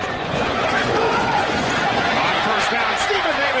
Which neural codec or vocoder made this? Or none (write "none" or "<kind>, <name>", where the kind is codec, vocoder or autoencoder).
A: vocoder, Vocos